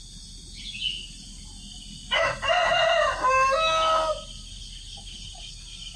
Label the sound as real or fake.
real